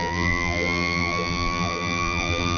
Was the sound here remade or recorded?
remade